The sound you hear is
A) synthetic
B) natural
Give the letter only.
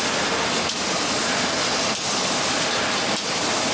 B